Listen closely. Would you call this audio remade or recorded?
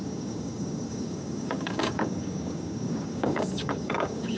remade